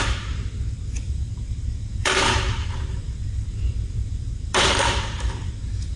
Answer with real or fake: fake